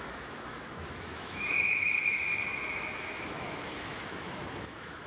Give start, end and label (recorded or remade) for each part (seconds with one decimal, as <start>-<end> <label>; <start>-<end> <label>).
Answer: 0.0-5.1 remade